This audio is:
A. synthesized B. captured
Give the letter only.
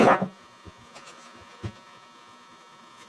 A